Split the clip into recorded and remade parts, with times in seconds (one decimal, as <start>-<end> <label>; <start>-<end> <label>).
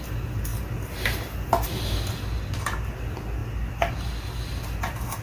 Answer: 0.0-5.2 recorded